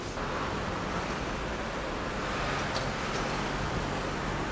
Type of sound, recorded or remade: recorded